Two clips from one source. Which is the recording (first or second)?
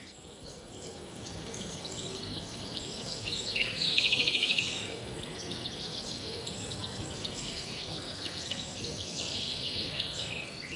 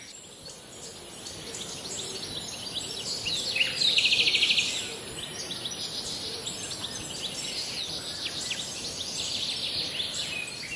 second